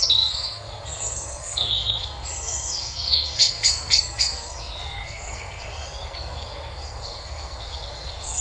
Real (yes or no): no